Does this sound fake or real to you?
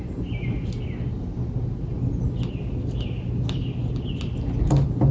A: real